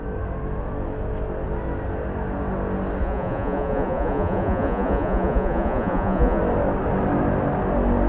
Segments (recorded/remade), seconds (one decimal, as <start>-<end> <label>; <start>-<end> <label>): 0.0-3.0 recorded; 3.0-6.4 remade; 6.4-8.1 recorded